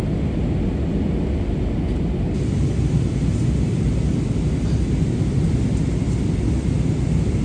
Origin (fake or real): real